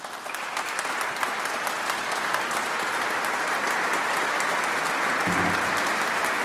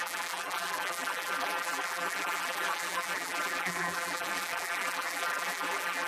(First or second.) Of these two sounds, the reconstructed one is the second